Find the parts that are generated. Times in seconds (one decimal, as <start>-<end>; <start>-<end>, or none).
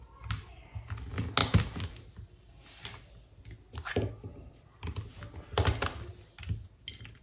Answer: none